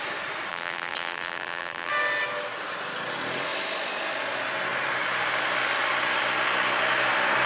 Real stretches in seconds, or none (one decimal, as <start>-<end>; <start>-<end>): 0.0-0.5; 1.9-7.5